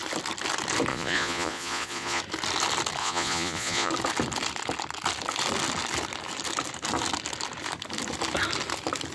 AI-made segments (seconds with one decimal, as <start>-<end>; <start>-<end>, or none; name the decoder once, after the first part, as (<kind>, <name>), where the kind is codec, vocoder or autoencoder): 0.9-2.2 (vocoder, Vocos); 3.0-3.9